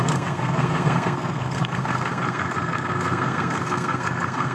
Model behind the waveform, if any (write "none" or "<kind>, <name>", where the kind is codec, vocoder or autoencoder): codec, SNAC